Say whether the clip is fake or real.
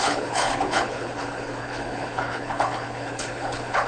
fake